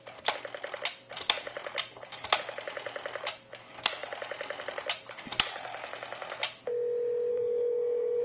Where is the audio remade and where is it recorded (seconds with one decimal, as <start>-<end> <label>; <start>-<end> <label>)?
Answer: 0.0-7.3 recorded; 7.3-8.2 remade